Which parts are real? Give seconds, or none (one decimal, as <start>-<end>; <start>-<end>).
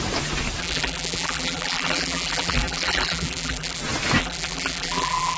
0.0-0.6; 3.8-4.2